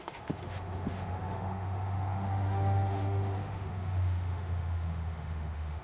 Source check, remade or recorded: remade